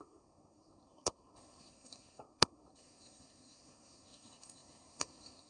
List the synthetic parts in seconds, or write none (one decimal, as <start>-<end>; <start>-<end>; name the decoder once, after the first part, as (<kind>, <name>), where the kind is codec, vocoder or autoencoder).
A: 0.0-5.5 (codec, SNAC)

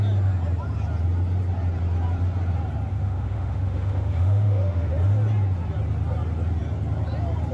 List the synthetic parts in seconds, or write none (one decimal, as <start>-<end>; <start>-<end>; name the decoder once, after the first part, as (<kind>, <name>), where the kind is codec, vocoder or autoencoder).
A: 2.9-4.9 (autoencoder, DAC-VAE)

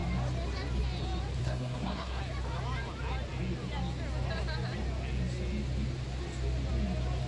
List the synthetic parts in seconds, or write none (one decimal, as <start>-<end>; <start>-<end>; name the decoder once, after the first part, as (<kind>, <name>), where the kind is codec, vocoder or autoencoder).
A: 1.4-2.2 (codec, SNAC)

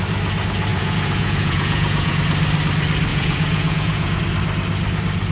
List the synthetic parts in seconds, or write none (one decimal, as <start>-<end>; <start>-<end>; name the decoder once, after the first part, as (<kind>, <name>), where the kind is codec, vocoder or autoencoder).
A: 0.7-2.2 (vocoder, Vocos); 3.1-4.2

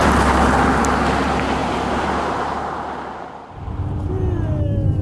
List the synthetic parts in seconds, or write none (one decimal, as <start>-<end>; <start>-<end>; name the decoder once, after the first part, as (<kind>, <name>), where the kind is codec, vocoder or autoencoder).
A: 1.6-3.1 (vocoder, BigVGAN v2)

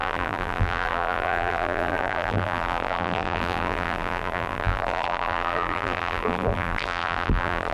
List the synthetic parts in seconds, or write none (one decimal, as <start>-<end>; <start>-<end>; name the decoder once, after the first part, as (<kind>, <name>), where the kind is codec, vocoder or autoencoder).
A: 0.0-7.7 (vocoder, BigVGAN v2)

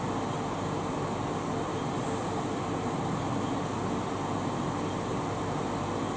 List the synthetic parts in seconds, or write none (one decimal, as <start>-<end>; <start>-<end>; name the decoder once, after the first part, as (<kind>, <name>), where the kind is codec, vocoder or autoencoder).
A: none

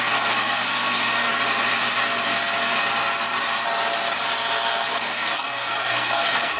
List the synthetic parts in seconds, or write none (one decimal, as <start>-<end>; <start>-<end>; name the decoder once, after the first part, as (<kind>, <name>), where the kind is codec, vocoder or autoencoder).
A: 0.0-1.3 (codec, SNAC); 4.9-6.6